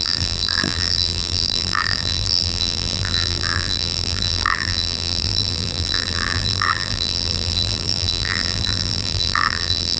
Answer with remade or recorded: remade